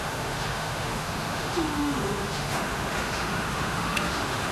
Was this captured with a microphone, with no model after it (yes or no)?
no